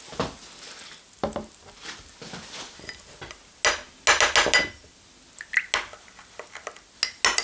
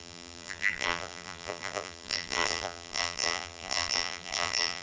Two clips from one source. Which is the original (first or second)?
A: first